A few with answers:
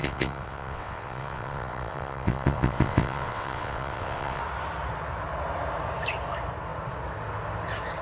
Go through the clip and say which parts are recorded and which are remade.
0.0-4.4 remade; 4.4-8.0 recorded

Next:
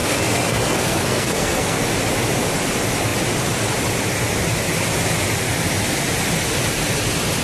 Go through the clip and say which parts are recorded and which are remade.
0.0-1.8 remade; 1.8-7.4 recorded

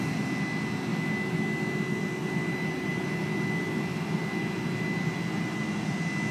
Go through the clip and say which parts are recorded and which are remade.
0.0-6.3 recorded

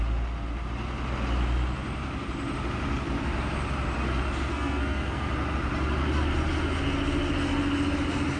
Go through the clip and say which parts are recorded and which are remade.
0.0-4.5 recorded; 4.5-5.3 remade; 5.3-8.4 recorded

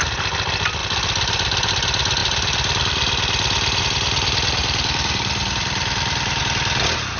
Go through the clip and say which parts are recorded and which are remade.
0.0-0.8 recorded; 0.8-1.7 remade; 1.7-2.2 recorded; 2.2-3.8 remade; 3.8-4.6 recorded; 4.6-6.4 remade; 6.4-7.2 recorded

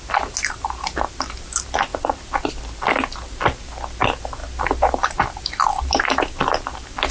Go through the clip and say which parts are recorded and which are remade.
0.0-7.1 recorded